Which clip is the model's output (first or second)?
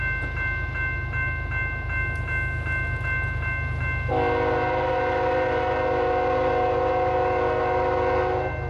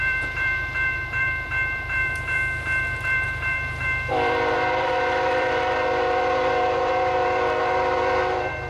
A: second